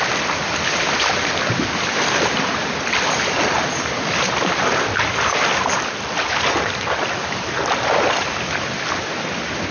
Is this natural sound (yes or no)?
yes